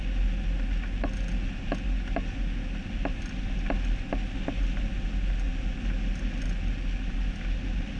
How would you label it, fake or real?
real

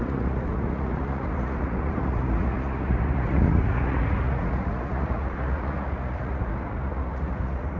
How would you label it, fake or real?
fake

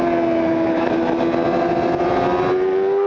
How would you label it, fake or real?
real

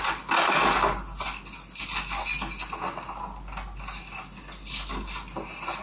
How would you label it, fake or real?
real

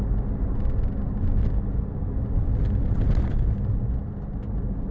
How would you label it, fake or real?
real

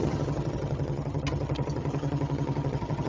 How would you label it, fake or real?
fake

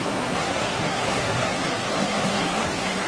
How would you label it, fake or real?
fake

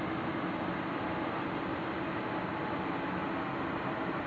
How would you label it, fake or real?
real